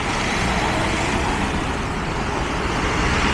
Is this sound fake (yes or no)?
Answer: no